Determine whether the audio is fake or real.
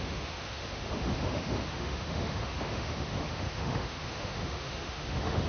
fake